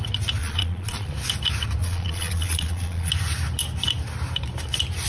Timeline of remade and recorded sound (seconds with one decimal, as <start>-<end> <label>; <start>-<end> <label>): 0.0-0.4 recorded; 0.4-1.1 remade; 1.1-1.8 recorded; 1.8-3.1 remade; 3.1-5.1 recorded